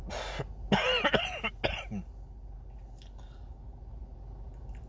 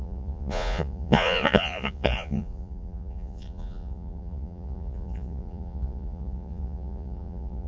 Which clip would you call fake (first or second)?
second